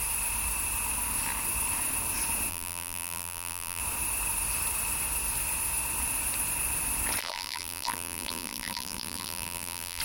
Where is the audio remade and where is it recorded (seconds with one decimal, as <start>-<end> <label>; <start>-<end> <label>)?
0.0-2.5 recorded; 2.5-3.8 remade; 3.8-7.2 recorded; 7.2-10.0 remade